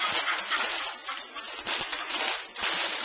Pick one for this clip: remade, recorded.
recorded